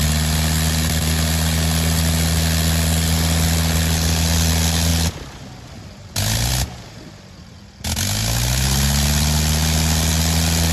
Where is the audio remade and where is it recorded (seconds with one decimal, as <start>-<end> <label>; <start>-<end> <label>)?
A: 0.0-10.7 recorded